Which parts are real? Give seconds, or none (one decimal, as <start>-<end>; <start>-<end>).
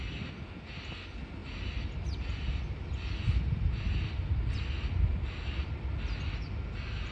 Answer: 0.0-7.1